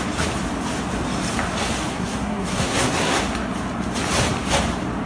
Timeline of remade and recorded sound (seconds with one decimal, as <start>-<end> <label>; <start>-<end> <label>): 0.0-1.9 recorded; 1.9-3.2 remade; 3.2-5.1 recorded